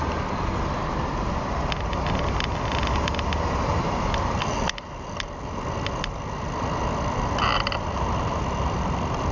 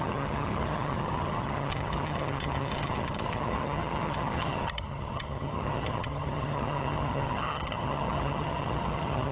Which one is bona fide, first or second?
first